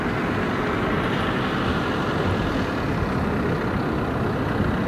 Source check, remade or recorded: recorded